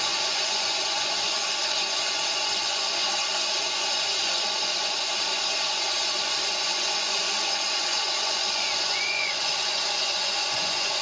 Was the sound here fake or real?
fake